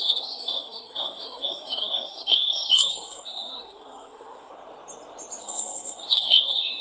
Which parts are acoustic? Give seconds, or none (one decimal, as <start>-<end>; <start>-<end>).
4.5-5.4